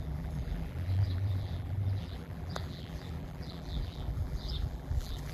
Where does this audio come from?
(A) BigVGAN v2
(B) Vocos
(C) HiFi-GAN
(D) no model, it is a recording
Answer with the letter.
A